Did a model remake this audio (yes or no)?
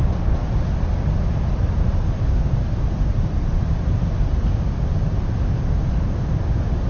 no